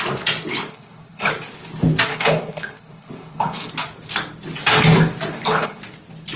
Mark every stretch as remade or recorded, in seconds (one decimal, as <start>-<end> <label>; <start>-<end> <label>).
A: 0.0-0.7 recorded; 0.7-1.3 remade; 1.3-2.1 recorded; 2.1-3.7 remade; 3.7-5.3 recorded; 5.3-5.8 remade; 5.8-6.4 recorded